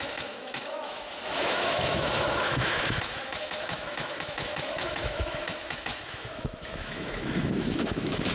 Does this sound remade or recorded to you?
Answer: remade